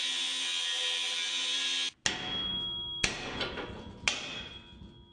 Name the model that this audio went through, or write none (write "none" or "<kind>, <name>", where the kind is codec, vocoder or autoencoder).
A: none